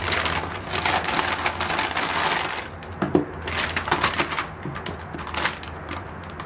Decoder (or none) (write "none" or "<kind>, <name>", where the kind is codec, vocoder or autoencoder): none